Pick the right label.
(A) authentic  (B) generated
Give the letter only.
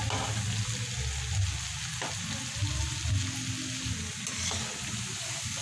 A